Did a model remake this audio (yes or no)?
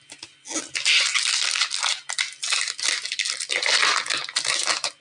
no